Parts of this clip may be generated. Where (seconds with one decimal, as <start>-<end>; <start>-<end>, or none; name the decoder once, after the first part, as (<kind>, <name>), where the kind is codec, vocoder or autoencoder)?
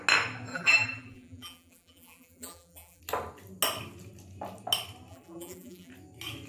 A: 0.5-3.0 (vocoder, BigVGAN v2); 5.1-5.9